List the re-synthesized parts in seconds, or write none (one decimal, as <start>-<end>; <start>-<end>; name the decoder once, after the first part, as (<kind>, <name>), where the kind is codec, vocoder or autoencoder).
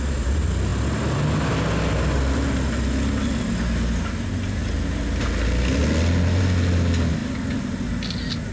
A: none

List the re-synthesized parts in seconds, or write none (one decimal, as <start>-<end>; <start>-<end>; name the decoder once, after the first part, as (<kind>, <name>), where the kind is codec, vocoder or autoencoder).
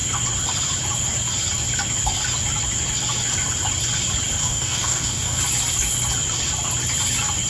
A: 4.4-5.4 (codec, DAC)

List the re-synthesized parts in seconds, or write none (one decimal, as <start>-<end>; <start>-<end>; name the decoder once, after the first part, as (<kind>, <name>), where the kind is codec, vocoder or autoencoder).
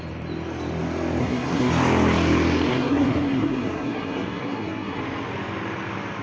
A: 1.2-1.7 (codec, SNAC); 2.7-5.0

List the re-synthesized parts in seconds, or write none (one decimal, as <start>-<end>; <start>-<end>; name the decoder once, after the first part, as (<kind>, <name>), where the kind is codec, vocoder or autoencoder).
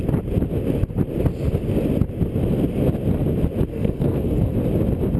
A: 3.7-4.5 (codec, SNAC)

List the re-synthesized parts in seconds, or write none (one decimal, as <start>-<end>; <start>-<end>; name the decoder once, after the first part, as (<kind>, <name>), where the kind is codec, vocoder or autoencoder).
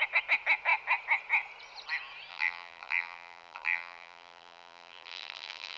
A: 2.3-5.8 (vocoder, BigVGAN v2)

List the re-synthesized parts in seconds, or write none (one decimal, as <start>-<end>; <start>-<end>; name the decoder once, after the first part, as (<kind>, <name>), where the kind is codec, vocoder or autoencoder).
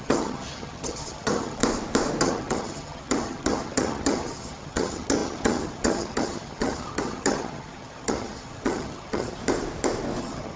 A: 0.0-1.6 (vocoder, HiFi-GAN); 2.2-9.4; 10.2-10.6